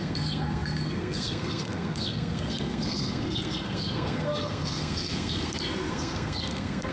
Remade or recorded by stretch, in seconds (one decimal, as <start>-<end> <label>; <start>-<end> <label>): 0.0-6.9 remade